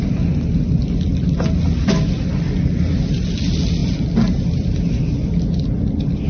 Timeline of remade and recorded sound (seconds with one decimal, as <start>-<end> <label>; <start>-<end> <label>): 0.0-6.3 recorded

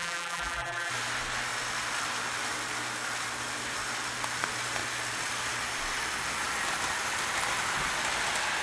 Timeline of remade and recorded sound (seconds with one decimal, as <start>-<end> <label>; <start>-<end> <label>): 0.0-0.9 remade; 0.9-8.6 recorded

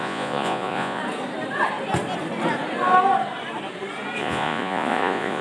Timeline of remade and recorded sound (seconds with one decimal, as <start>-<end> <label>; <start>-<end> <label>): 0.0-1.0 remade; 1.0-4.2 recorded; 4.2-5.4 remade

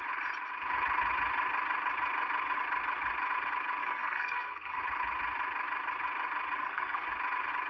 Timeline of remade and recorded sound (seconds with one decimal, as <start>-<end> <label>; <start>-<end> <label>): 0.0-3.8 recorded; 3.8-4.8 remade; 4.8-6.6 recorded; 6.6-7.1 remade; 7.1-7.7 recorded

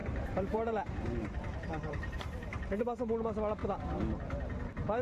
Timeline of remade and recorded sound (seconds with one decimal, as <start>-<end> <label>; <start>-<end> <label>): 0.0-2.8 remade; 2.8-5.0 recorded

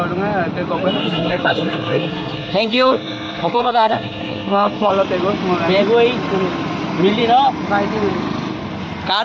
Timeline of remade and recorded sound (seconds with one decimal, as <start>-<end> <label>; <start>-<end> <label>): 0.0-1.0 recorded; 1.0-4.9 remade; 4.9-9.2 recorded